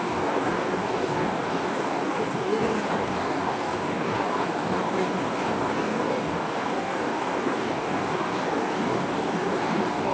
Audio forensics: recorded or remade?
remade